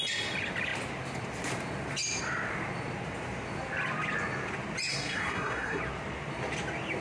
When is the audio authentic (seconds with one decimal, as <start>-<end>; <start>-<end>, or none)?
0.0-4.9; 5.8-7.0